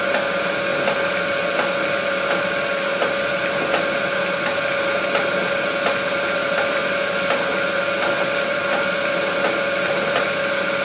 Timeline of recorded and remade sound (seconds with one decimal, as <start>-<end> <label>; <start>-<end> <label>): 0.0-10.8 recorded